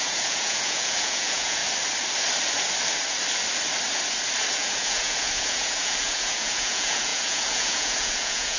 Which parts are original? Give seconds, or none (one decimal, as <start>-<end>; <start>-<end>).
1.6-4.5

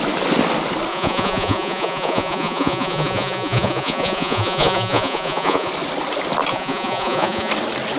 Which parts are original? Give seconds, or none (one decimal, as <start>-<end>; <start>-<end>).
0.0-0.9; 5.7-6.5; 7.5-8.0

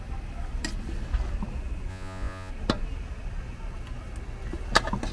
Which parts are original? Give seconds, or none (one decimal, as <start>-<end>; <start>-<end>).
0.0-1.9; 2.5-5.1

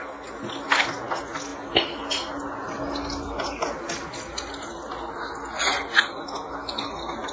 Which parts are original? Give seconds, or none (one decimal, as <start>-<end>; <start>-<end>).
0.0-7.3

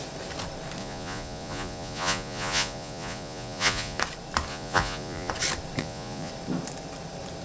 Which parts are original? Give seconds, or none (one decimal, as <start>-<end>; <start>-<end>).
0.0-0.8; 4.0-4.5; 5.3-5.8; 6.3-7.4